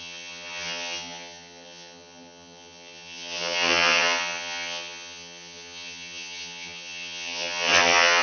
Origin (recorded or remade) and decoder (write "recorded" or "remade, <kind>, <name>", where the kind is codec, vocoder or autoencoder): remade, vocoder, HiFi-GAN